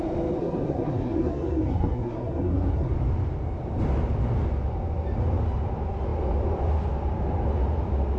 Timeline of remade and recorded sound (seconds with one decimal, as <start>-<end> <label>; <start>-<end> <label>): 0.0-0.4 recorded; 0.4-2.9 remade; 2.9-8.2 recorded